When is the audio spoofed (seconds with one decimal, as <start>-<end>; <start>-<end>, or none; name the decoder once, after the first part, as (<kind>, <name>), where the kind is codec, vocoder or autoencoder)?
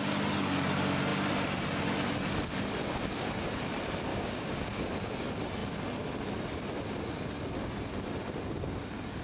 4.1-4.7 (codec, DAC)